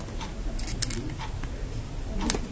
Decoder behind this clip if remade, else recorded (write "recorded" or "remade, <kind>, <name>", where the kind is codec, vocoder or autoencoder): recorded